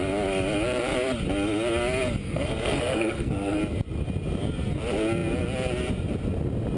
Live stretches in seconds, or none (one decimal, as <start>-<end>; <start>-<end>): 0.0-2.2; 3.6-6.8